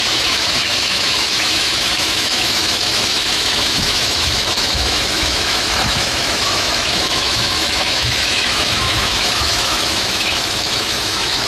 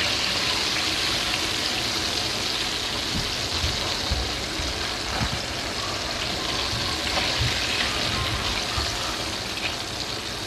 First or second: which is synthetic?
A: first